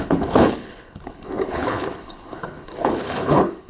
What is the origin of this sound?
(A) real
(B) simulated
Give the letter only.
B